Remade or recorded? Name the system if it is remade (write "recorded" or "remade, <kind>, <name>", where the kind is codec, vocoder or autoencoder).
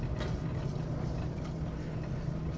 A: recorded